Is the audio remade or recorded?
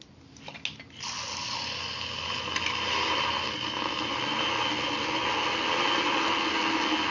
recorded